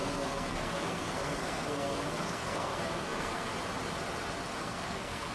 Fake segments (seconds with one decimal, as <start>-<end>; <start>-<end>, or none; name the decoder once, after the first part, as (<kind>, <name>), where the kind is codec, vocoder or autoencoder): 0.0-3.5 (codec, SNAC); 4.6-5.3